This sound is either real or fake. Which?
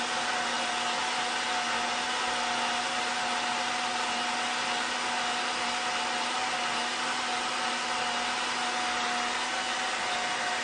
real